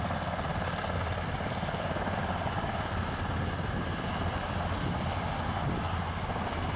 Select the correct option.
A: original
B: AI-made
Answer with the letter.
A